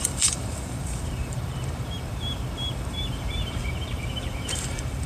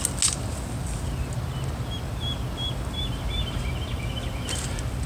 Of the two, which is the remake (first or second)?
first